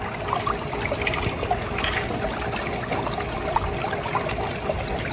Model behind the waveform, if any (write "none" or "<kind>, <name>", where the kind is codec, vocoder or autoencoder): none